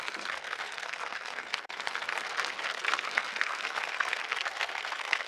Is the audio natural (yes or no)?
no